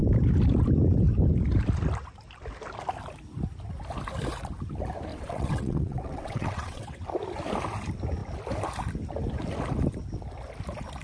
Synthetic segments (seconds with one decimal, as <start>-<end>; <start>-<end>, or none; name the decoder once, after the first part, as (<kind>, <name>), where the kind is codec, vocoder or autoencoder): 5.1-7.0 (vocoder, WaveNeXt)

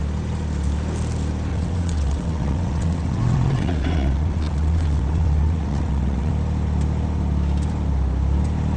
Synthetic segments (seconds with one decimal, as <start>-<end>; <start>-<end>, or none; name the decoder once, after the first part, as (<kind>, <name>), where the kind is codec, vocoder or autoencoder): 1.5-6.3 (vocoder, WaveNeXt)

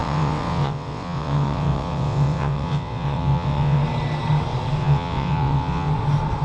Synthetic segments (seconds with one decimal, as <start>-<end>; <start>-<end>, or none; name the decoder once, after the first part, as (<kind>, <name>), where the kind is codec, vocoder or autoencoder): 0.0-3.8 (vocoder, WaveNeXt); 4.8-5.9

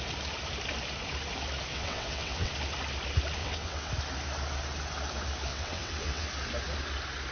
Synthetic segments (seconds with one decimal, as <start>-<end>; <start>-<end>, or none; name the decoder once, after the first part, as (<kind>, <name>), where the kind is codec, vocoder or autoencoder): 1.7-2.5 (vocoder, WaveNeXt); 3.4-3.9; 5.5-6.3